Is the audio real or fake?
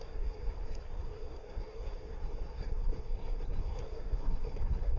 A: fake